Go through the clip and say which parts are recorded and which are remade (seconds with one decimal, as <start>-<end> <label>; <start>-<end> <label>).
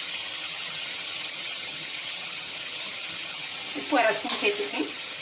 0.0-3.5 remade; 3.5-4.7 recorded; 4.7-5.2 remade